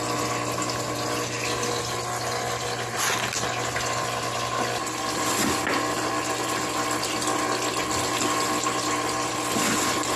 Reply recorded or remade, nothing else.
recorded